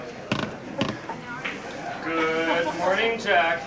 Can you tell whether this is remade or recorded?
recorded